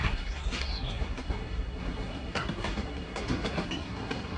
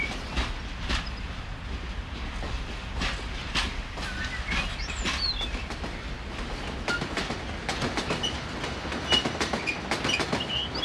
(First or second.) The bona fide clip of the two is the second